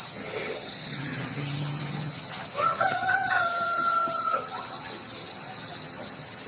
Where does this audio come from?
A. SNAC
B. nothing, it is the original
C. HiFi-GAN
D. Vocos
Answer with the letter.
C